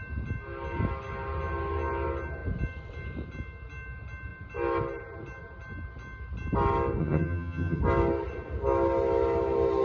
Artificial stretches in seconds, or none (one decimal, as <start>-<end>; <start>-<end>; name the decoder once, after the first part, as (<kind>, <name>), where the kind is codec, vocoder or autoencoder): 7.0-7.8 (vocoder, HiFi-GAN)